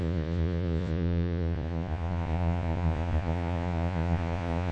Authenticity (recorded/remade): remade